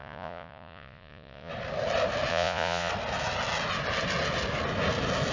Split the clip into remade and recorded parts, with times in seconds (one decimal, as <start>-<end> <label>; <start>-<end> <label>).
0.0-1.5 remade; 1.5-2.3 recorded; 2.3-2.9 remade; 2.9-5.3 recorded